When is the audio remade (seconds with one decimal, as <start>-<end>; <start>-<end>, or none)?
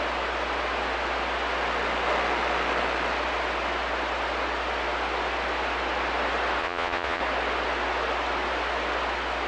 6.6-7.2